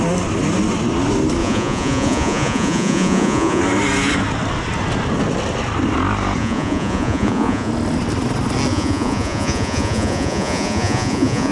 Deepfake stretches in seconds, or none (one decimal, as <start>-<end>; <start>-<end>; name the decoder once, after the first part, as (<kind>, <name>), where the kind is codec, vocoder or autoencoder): 1.4-3.6 (vocoder, Vocos); 6.4-7.7; 8.7-11.5